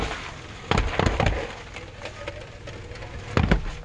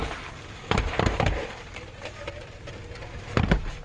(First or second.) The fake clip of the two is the second